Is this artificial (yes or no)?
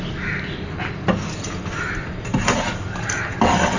no